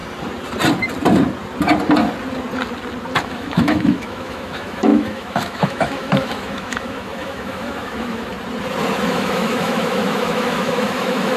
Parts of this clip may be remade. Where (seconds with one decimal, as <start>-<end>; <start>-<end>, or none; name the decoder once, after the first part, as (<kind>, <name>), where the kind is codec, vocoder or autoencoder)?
3.2-8.3 (autoencoder, DAC-VAE); 9.1-11.4